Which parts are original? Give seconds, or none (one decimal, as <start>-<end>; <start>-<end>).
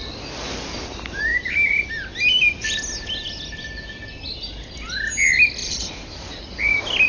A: 0.0-1.3; 1.9-5.6; 6.4-7.1